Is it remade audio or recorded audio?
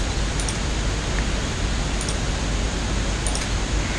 recorded